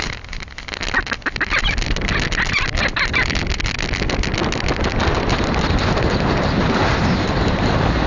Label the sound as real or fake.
real